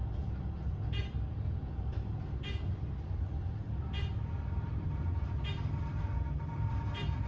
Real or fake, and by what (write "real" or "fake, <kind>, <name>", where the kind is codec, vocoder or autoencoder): fake, vocoder, BigVGAN v2